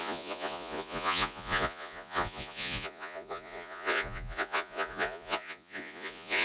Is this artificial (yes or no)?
yes